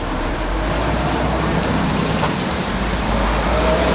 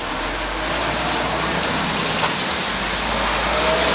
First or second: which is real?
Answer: second